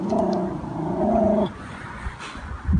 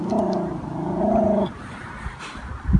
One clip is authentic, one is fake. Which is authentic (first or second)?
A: second